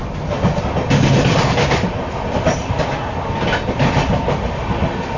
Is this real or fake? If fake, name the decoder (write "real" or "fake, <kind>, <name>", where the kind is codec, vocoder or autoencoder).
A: real